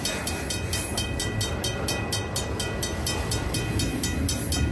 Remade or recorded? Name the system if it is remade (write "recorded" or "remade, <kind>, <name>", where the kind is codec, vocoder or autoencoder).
recorded